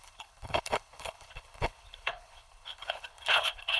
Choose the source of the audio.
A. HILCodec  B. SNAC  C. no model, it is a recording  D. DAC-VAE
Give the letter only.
A